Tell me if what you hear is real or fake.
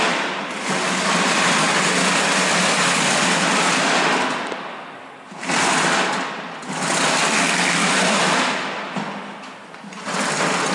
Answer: fake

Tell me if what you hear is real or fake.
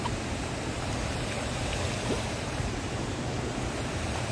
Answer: fake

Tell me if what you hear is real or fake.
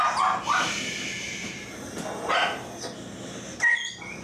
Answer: real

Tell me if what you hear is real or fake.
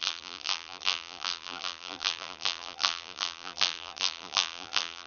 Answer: fake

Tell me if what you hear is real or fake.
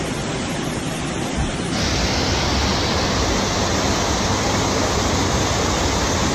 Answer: real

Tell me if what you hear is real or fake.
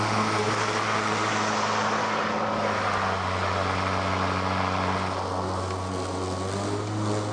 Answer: real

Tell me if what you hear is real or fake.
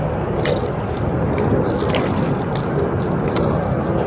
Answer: real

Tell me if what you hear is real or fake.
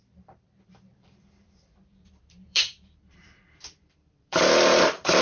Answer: fake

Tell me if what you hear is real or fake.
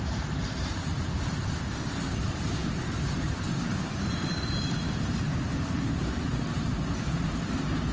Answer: fake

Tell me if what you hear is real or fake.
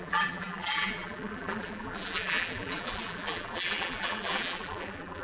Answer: fake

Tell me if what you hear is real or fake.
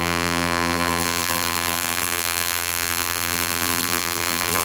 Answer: fake